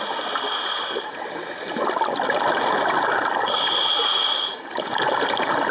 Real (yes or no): yes